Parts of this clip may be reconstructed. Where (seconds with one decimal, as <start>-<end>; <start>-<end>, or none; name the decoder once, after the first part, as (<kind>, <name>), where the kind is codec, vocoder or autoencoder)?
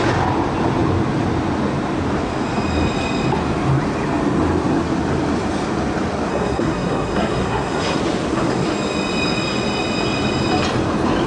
6.3-8.0 (codec, SNAC)